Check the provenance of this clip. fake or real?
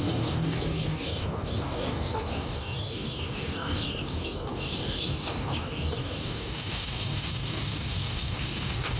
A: fake